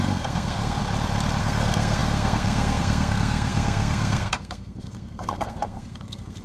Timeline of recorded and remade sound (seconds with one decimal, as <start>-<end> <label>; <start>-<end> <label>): 0.0-0.8 remade; 0.8-1.4 recorded; 1.4-6.4 remade